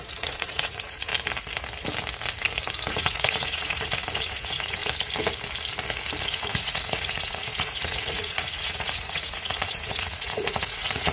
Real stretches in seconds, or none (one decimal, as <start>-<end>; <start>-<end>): 1.1-2.9; 4.8-6.2